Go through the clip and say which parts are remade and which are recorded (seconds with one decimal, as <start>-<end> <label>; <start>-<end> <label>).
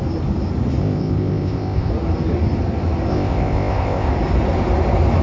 0.0-0.8 recorded; 0.8-1.9 remade; 1.9-3.1 recorded; 3.1-4.1 remade; 4.1-5.2 recorded